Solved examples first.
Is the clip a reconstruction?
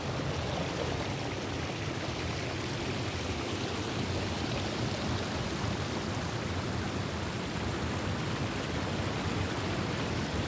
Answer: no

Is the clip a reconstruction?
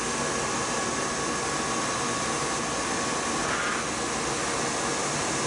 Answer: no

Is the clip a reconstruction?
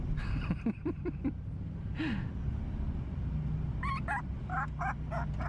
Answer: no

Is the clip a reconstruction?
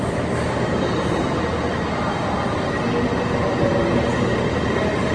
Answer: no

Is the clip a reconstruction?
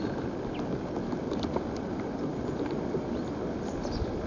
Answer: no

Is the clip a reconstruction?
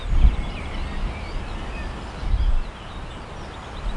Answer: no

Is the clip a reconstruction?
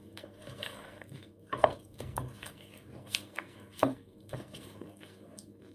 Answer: yes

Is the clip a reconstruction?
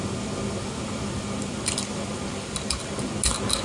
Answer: no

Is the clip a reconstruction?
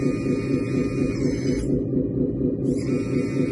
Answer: no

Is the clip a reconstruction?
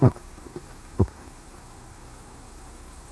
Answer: yes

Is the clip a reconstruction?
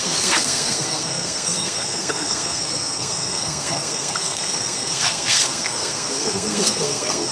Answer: yes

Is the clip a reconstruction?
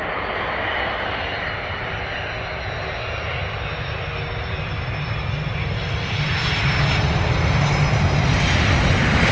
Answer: no